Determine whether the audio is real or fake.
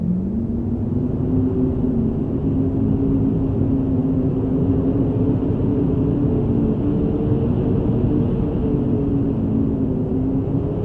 real